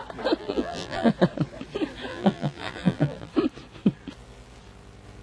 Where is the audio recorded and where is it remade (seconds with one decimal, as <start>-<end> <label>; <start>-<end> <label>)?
0.0-0.4 recorded; 0.4-1.1 remade; 1.1-2.1 recorded; 2.1-3.3 remade; 3.3-5.2 recorded